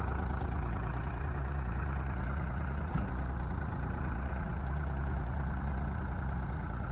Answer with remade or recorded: remade